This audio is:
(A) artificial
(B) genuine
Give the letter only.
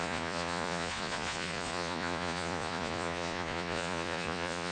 A